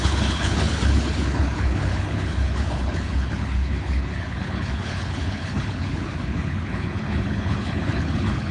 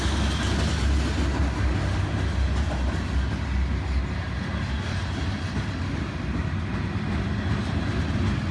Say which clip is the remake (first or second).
first